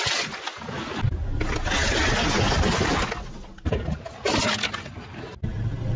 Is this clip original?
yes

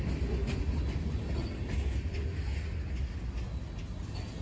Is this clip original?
yes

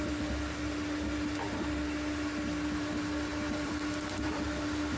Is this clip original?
no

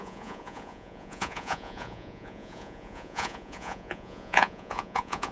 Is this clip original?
no